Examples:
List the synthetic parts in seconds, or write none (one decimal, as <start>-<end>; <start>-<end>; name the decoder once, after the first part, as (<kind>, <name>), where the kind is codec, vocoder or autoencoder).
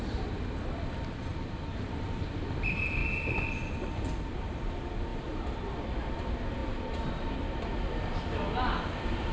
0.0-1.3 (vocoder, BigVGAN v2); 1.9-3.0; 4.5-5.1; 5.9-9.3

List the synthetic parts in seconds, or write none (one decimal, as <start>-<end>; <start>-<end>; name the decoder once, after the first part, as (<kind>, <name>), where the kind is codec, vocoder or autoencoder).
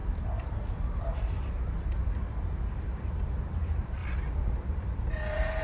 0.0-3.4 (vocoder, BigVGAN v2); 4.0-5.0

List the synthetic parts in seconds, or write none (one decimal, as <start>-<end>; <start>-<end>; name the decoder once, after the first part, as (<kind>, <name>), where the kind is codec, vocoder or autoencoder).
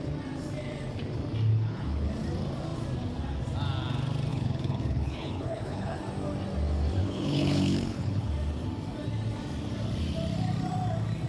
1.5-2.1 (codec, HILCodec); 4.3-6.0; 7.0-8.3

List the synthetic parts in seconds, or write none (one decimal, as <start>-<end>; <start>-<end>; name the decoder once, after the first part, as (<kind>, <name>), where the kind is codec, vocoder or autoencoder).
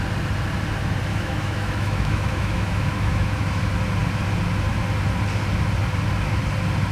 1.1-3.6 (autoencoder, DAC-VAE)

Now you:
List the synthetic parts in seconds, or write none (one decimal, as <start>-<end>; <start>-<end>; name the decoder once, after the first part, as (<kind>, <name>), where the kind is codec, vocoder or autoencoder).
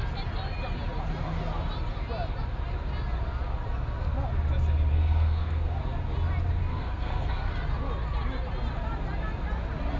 4.9-5.8 (codec, SNAC); 6.7-7.5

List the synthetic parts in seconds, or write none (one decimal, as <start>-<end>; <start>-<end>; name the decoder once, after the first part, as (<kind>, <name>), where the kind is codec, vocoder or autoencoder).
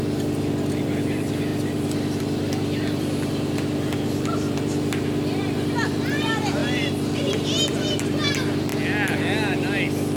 0.0-8.7 (vocoder, BigVGAN v2)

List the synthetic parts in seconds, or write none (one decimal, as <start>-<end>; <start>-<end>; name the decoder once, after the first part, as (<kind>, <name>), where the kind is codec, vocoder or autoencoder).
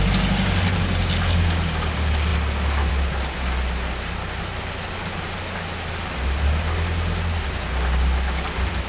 none